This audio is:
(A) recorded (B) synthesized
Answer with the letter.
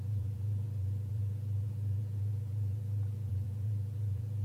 B